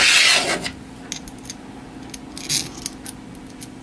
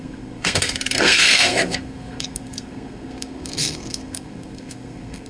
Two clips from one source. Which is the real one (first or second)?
first